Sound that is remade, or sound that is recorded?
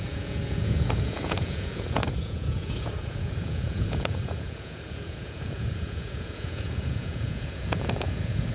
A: remade